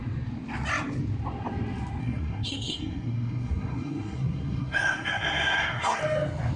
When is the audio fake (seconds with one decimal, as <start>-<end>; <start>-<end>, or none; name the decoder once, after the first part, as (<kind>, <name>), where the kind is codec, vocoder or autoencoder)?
2.0-6.0 (codec, SNAC)

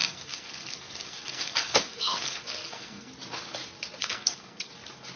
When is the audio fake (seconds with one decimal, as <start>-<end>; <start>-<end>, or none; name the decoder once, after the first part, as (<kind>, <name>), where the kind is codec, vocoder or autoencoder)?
0.0-3.1 (codec, SNAC); 4.0-4.7

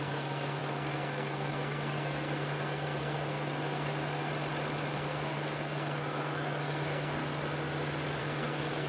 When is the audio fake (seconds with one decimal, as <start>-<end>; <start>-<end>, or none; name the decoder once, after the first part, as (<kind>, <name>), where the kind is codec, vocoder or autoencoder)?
0.0-4.3 (codec, SNAC); 4.9-7.2; 8.2-8.9

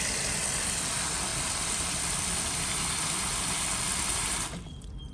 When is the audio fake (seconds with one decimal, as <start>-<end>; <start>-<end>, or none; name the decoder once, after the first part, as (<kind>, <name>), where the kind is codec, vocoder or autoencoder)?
none

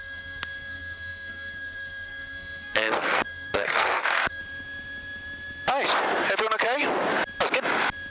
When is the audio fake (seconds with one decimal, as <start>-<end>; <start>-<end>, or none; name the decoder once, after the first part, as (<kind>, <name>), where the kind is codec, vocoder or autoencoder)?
0.0-4.4 (codec, SNAC)

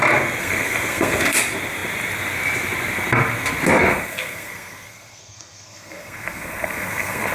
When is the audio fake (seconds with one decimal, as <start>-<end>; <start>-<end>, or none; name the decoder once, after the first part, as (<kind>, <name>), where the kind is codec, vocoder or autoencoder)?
0.4-1.4 (codec, SNAC); 3.9-7.3